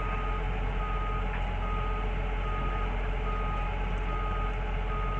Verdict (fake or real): real